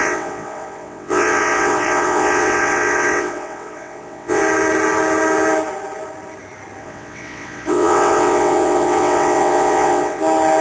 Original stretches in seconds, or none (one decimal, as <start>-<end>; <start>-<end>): 4.4-6.8; 10.2-10.6